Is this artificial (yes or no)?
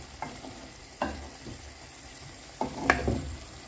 yes